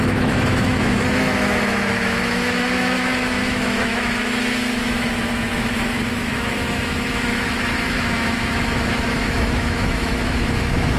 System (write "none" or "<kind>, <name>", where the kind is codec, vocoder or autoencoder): autoencoder, DAC-VAE